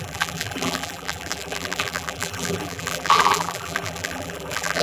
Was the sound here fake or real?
fake